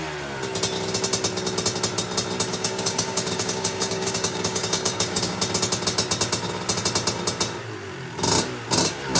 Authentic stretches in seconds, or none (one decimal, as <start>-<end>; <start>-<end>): 0.0-2.5; 5.4-9.2